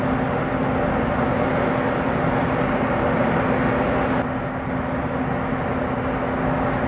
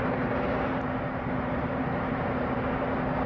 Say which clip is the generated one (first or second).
second